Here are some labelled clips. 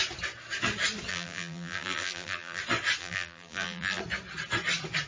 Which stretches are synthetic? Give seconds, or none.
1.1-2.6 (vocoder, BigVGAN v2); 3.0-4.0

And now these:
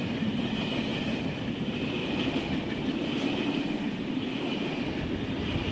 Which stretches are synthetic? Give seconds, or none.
2.0-5.0 (vocoder, BigVGAN v2)

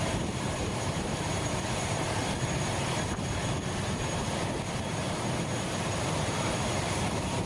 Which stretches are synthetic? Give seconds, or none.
0.0-2.2 (vocoder, BigVGAN v2); 5.4-7.5

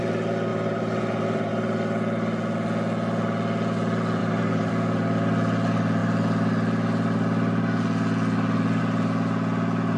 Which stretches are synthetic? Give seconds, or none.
0.5-1.5 (vocoder, BigVGAN v2); 4.2-4.7